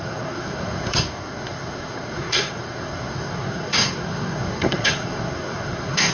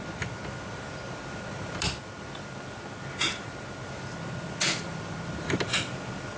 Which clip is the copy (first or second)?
first